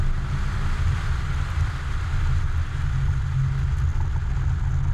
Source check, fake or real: real